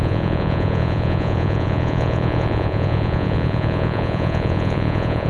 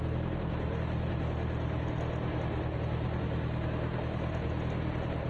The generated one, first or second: first